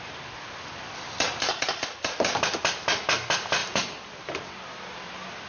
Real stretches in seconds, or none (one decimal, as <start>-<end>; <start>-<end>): 0.0-5.5